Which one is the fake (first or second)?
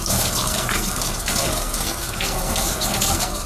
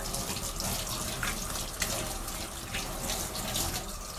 first